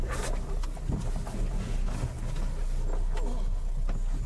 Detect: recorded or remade recorded